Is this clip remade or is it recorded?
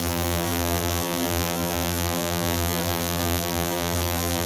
remade